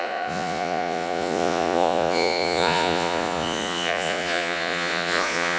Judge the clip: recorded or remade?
remade